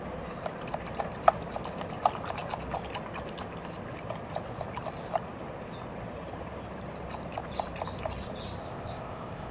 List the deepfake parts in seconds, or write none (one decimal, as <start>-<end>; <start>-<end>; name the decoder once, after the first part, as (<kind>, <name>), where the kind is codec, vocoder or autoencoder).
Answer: 8.6-9.5 (codec, ZipCodec)